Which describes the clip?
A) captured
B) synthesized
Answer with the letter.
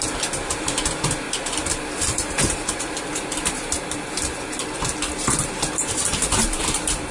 B